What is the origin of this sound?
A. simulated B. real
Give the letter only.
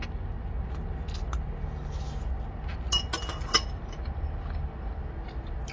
B